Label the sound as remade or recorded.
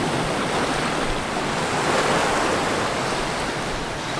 remade